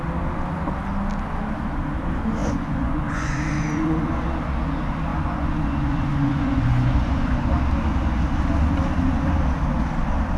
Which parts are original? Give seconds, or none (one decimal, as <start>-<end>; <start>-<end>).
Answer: 0.0-2.4; 4.3-5.1; 7.5-10.4